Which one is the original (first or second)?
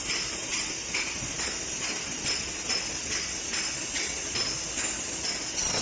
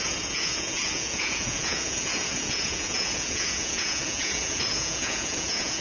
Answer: first